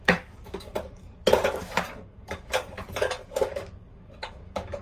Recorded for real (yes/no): no